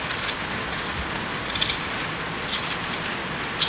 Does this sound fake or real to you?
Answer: fake